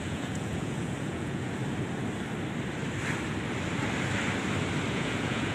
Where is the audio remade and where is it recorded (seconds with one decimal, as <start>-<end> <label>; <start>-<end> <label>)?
0.0-1.6 remade; 1.6-4.9 recorded; 4.9-5.5 remade